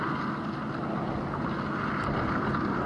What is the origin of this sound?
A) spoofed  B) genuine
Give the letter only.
B